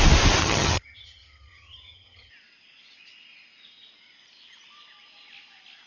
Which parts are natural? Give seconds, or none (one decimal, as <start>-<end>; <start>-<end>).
0.0-0.4; 2.3-5.9